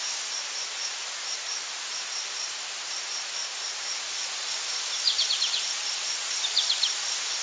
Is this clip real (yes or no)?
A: yes